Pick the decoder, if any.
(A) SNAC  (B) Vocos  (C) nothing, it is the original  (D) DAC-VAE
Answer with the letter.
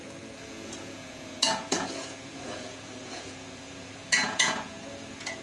B